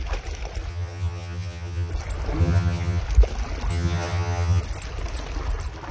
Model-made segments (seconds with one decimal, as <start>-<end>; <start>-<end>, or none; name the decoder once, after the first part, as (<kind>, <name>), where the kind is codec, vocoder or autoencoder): 0.7-1.9 (vocoder, HiFi-GAN); 2.4-3.0; 3.7-4.6